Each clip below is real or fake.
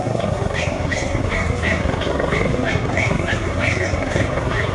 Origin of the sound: fake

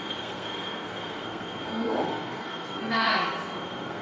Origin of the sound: fake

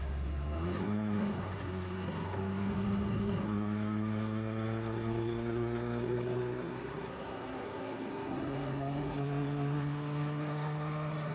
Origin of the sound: fake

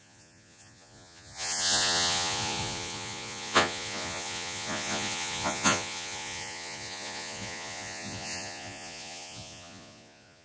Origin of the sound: fake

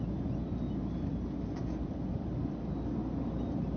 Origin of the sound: real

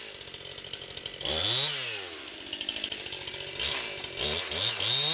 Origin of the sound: real